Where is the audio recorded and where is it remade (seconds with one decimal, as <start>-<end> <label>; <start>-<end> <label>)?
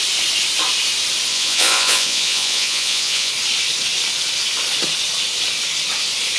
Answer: 0.0-1.3 recorded; 1.3-3.3 remade; 3.3-6.4 recorded